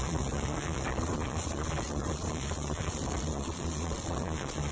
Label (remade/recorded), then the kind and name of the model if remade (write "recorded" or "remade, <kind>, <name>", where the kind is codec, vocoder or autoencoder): remade, vocoder, Vocos